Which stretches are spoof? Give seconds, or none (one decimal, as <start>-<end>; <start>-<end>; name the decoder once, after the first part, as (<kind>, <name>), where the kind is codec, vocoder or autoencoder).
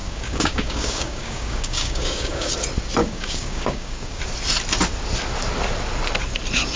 0.0-2.5 (codec, DAC); 3.0-4.2